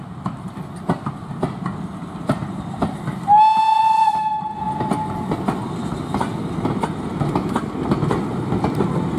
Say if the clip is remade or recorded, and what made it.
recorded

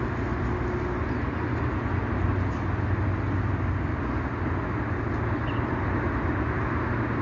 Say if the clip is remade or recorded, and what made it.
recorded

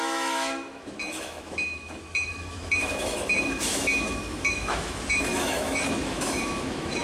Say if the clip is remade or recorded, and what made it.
remade, autoencoder, DAC-VAE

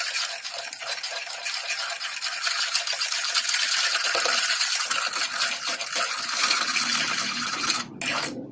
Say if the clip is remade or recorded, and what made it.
recorded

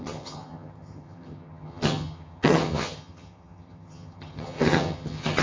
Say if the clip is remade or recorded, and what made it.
remade, vocoder, HiFi-GAN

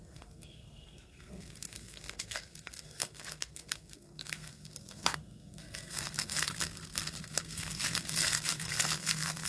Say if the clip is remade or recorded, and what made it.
remade, codec, SNAC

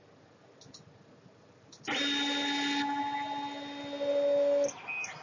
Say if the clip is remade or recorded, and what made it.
recorded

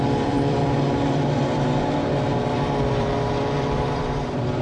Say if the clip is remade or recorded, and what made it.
remade, vocoder, BigVGAN v2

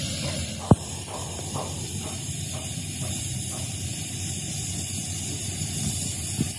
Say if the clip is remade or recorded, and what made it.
remade, vocoder, BigVGAN v2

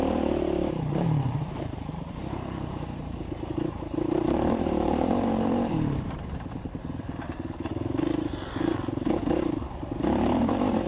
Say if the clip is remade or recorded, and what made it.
remade, vocoder, BigVGAN v2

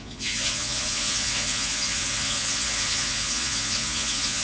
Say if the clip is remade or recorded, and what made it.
remade, vocoder, Vocos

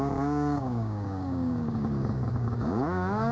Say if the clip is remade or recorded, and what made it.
remade, codec, DAC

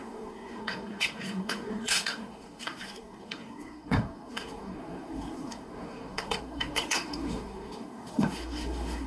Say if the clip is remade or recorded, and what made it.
remade, codec, SNAC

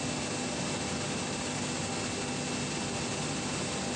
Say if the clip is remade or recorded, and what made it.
recorded